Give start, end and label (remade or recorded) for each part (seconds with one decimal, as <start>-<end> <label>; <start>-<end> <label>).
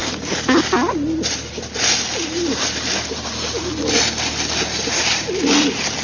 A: 0.0-6.0 recorded